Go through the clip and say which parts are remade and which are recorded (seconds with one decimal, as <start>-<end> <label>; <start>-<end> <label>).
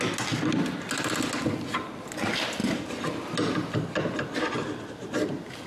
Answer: 0.0-5.7 recorded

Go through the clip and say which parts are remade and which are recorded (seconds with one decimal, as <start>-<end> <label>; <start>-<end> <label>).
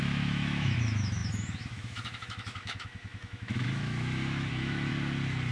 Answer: 0.0-4.9 remade; 4.9-5.5 recorded